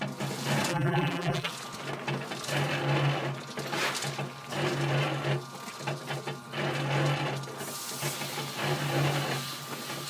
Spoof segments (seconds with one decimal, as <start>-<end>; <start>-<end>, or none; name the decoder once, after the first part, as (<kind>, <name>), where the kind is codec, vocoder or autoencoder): 0.7-1.5 (vocoder, BigVGAN v2)